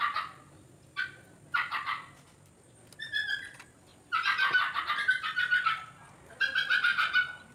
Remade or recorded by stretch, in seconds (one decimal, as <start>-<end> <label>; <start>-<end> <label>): 0.0-7.5 recorded